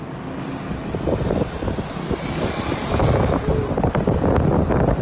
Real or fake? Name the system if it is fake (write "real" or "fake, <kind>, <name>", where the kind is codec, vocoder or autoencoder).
real